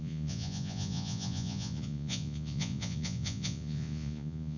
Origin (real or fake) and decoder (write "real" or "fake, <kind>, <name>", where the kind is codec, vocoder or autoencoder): fake, vocoder, Vocos